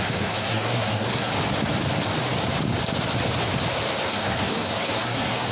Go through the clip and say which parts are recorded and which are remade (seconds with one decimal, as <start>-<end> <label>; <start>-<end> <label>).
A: 0.0-1.3 remade; 1.3-4.1 recorded; 4.1-5.5 remade